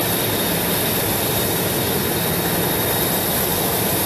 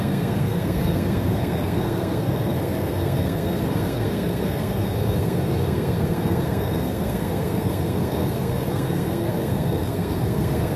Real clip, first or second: first